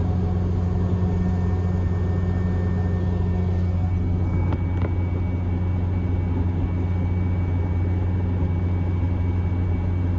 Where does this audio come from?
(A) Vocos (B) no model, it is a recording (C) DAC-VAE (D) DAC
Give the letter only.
B